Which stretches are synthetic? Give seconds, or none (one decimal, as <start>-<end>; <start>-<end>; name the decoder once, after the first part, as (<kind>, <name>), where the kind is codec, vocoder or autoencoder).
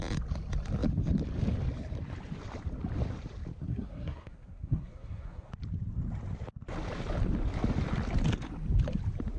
3.7-5.5 (codec, SNAC)